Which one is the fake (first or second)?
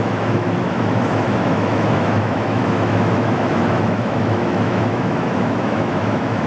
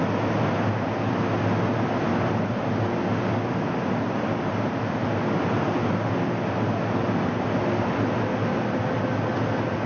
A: first